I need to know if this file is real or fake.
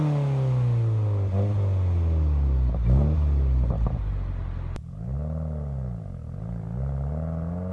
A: real